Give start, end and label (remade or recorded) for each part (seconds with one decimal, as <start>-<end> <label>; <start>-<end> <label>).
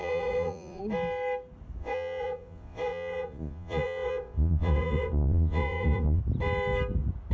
0.0-0.8 remade; 0.8-1.8 recorded; 1.8-6.2 remade; 6.2-7.3 recorded